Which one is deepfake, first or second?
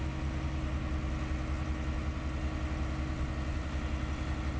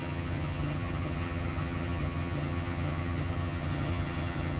second